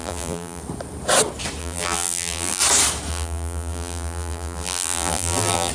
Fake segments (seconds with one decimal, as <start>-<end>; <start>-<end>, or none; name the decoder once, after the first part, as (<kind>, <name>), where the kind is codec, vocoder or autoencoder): 0.0-0.6 (vocoder, BigVGAN v2); 1.6-2.6; 3.1-5.7